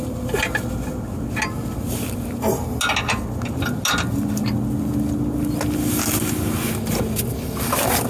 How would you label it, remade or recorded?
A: recorded